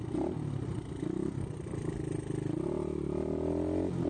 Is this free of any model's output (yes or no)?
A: yes